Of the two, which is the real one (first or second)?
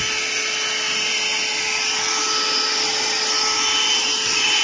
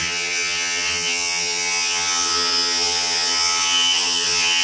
first